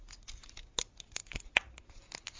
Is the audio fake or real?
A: real